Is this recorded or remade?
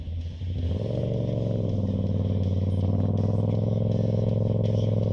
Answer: recorded